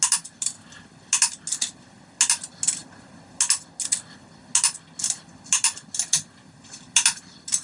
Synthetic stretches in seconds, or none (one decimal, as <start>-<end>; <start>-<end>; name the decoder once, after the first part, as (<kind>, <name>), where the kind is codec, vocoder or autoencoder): none